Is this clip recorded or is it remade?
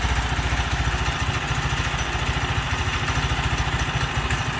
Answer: recorded